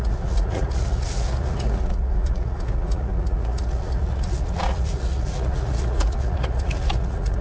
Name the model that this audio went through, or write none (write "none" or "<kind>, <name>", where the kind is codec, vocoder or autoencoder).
vocoder, Vocos